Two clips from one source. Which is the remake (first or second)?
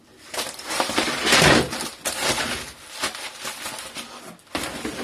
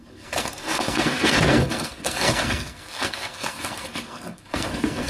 second